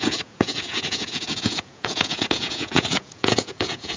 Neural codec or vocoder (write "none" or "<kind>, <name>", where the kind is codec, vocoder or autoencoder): vocoder, Vocos